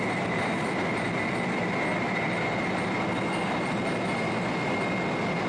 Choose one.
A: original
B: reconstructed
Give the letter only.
A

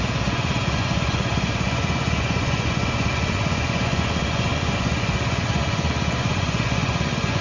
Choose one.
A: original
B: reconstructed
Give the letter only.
B